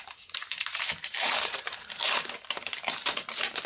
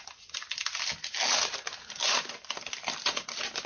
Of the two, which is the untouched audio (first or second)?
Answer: second